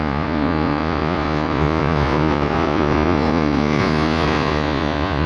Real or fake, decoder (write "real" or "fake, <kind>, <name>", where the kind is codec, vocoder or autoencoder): fake, vocoder, Vocos